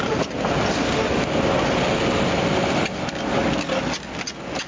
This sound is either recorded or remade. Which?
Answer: recorded